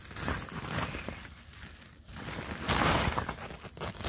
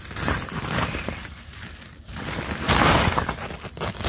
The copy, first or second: second